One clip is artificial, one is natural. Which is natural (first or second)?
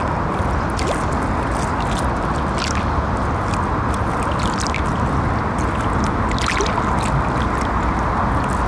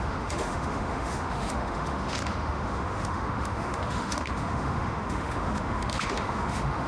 first